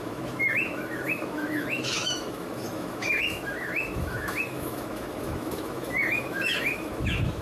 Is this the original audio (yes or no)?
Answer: no